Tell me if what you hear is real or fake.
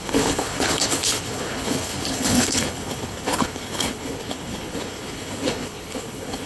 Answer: fake